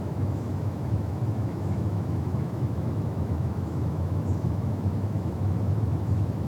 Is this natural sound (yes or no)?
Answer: no